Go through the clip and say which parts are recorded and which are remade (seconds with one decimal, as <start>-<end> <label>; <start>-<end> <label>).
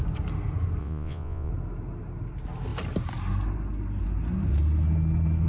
0.0-0.8 recorded; 0.8-1.5 remade; 1.5-5.5 recorded